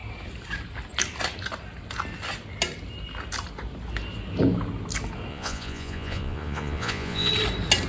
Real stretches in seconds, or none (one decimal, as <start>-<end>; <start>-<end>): 0.0-5.3; 7.3-7.9